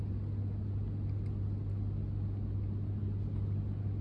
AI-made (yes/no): no